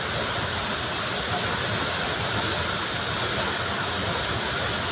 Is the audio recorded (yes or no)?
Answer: yes